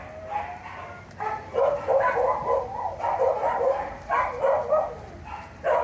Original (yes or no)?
yes